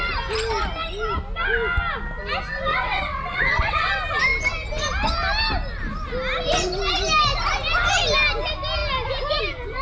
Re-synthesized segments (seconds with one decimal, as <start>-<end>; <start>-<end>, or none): 2.7-3.9